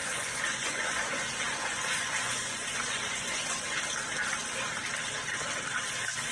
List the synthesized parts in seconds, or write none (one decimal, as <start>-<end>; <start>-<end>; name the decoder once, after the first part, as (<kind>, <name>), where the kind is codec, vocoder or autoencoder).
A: 0.0-3.8 (vocoder, Vocos)